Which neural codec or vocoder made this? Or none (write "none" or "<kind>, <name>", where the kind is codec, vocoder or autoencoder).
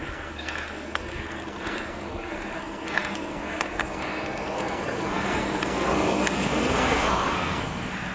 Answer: codec, SNAC